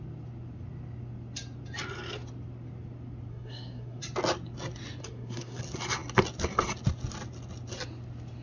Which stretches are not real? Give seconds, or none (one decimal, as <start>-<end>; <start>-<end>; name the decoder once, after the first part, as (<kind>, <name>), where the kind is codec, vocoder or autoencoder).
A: 3.3-4.0 (codec, SNAC); 5.0-5.6